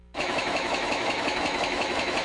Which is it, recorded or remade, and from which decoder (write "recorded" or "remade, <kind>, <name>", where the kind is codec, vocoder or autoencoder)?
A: remade, autoencoder, DAC-VAE